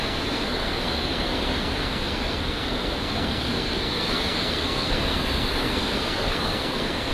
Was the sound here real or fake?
fake